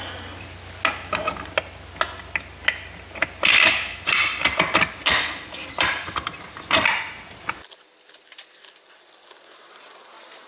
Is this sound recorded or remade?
recorded